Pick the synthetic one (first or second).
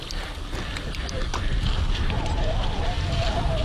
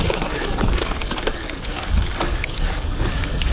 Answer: second